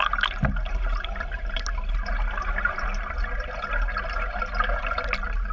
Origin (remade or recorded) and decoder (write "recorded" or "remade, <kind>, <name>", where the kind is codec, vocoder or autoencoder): recorded